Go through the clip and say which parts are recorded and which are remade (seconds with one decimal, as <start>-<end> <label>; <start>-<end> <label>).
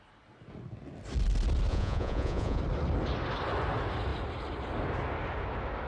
0.0-1.7 recorded; 1.7-2.6 remade; 2.6-5.9 recorded